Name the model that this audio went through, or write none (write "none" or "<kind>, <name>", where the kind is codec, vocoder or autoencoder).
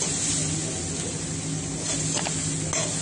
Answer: none